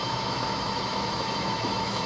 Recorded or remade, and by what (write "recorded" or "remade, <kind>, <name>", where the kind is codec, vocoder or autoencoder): remade, autoencoder, DAC-VAE